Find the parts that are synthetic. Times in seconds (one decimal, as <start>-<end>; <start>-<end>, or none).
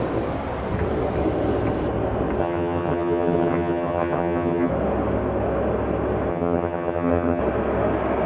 2.4-4.7; 6.3-7.4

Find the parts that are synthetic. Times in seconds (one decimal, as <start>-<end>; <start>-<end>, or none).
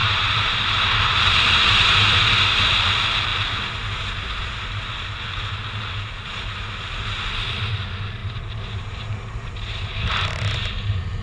0.0-2.2; 8.2-9.5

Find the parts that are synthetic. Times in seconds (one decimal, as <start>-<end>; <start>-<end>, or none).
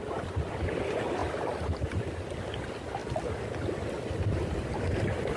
1.2-2.1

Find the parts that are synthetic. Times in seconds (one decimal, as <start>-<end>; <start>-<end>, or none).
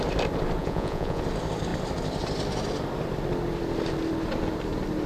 0.6-1.2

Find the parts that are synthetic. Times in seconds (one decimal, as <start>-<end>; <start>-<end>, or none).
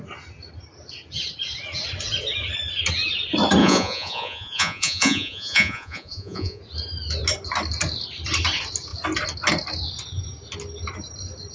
3.6-6.6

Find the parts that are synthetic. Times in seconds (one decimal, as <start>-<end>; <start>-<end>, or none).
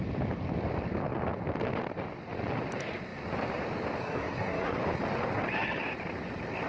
4.0-4.8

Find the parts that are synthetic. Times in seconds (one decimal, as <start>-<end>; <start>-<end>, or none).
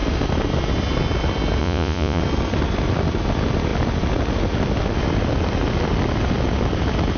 1.6-2.2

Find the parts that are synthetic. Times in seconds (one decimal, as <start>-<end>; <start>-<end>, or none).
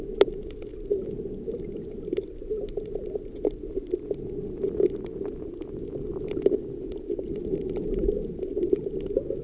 none